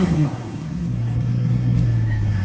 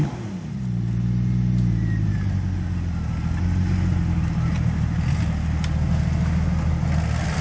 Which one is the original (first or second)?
second